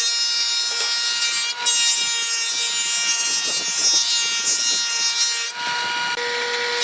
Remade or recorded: recorded